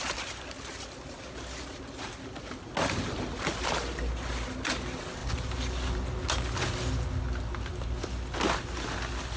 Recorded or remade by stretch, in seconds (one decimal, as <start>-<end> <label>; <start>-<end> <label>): 0.0-9.4 recorded